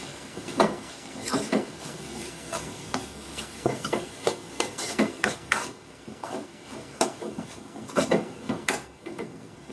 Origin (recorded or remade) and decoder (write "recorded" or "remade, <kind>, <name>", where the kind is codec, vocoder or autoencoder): remade, codec, SNAC